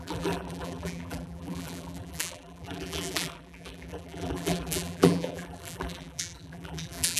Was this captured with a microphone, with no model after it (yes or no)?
no